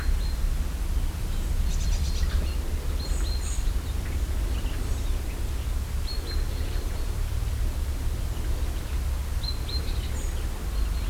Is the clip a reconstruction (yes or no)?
no